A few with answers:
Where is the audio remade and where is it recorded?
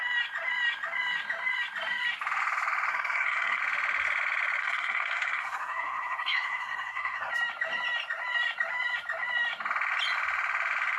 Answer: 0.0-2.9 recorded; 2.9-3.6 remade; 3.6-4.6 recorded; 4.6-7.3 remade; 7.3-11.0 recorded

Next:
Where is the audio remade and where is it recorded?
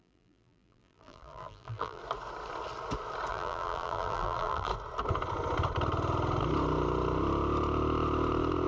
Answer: 0.0-2.0 remade; 2.0-3.3 recorded; 3.3-4.7 remade; 4.7-8.7 recorded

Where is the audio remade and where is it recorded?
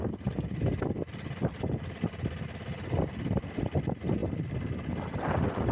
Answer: 0.0-5.7 recorded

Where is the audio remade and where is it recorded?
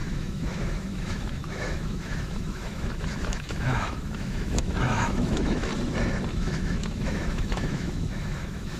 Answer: 0.0-5.7 remade; 5.7-6.3 recorded; 6.3-8.8 remade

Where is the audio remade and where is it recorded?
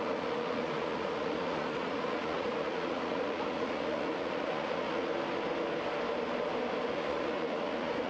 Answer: 0.0-5.1 remade; 5.1-6.9 recorded; 6.9-8.1 remade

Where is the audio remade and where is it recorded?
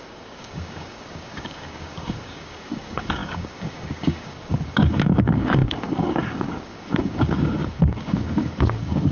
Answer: 0.0-9.1 remade